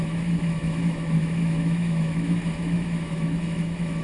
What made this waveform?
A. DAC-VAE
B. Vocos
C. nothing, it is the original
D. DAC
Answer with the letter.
A